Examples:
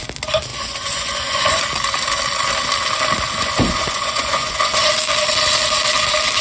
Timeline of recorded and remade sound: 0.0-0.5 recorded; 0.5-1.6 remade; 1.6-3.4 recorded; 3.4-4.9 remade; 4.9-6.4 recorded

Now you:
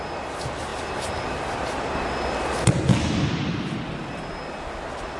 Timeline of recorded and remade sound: 0.0-5.2 recorded

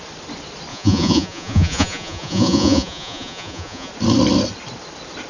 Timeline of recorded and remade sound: 0.0-0.7 recorded; 0.7-3.9 remade; 3.9-5.3 recorded

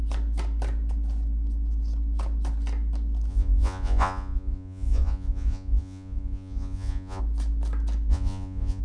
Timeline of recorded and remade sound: 0.0-3.3 recorded; 3.3-7.2 remade; 7.2-8.1 recorded; 8.1-8.8 remade

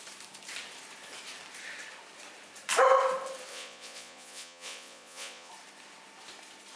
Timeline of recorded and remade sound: 0.0-3.5 recorded; 3.5-5.5 remade; 5.5-6.8 recorded

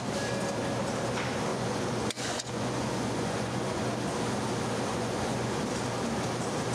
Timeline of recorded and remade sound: 0.0-1.5 recorded; 1.5-3.8 remade; 3.8-4.9 recorded; 4.9-5.6 remade; 5.6-6.7 recorded

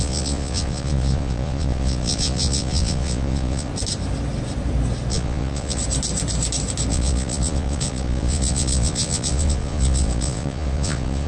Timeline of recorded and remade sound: 0.0-3.7 remade; 3.7-5.1 recorded; 5.1-5.8 remade; 5.8-6.9 recorded; 6.9-11.3 remade

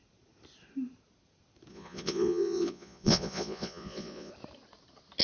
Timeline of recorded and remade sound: 0.0-1.7 recorded; 1.7-4.3 remade; 4.3-5.2 recorded